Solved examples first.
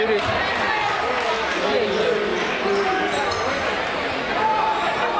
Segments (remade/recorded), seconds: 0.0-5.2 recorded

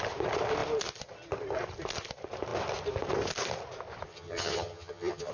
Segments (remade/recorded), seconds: 0.0-4.1 recorded; 4.1-5.3 remade